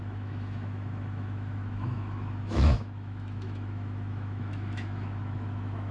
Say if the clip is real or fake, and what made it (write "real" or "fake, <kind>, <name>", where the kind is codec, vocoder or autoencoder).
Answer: fake, autoencoder, DAC-VAE